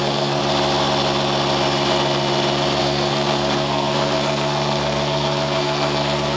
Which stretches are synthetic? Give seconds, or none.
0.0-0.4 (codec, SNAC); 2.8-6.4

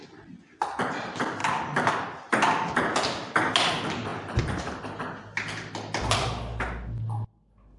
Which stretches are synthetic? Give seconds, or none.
none

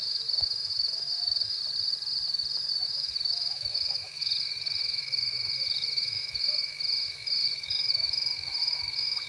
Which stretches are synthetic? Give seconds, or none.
0.0-1.6 (autoencoder, DAC-VAE); 2.8-9.3

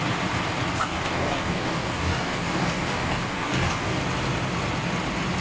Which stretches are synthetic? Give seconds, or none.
0.8-4.0 (codec, DAC)

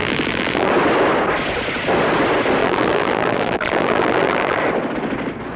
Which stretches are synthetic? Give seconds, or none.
0.0-0.7 (vocoder, BigVGAN v2); 2.6-4.6